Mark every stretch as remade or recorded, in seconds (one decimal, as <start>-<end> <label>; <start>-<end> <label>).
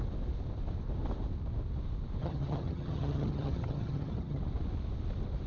0.0-2.2 recorded; 2.2-4.4 remade; 4.4-5.5 recorded